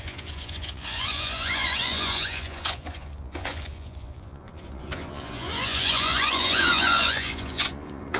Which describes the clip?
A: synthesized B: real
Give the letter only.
A